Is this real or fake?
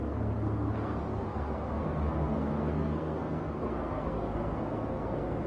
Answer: fake